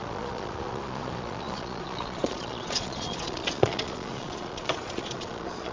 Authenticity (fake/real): fake